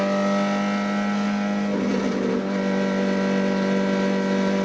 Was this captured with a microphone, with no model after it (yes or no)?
yes